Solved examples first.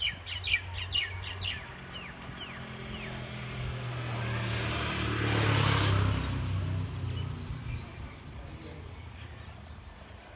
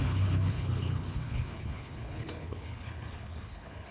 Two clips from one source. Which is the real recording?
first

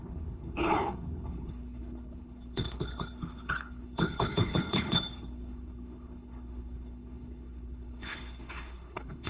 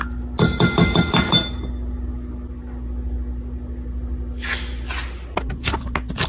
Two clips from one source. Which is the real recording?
second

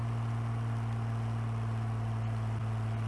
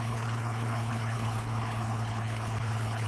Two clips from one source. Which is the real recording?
first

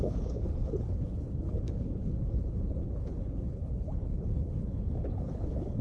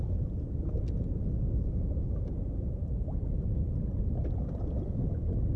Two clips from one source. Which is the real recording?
second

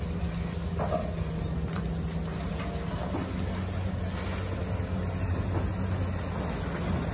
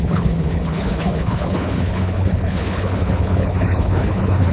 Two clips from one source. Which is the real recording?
first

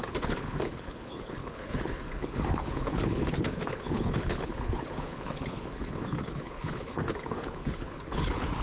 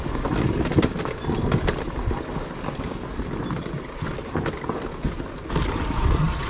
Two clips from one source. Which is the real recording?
second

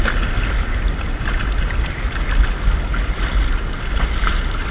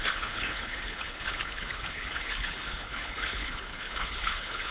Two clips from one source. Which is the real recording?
first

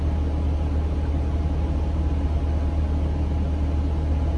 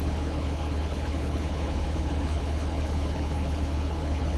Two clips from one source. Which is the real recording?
first